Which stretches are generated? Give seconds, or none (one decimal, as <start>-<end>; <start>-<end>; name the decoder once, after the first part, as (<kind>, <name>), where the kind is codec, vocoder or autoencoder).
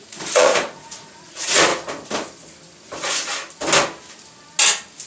0.0-1.7 (vocoder, Vocos)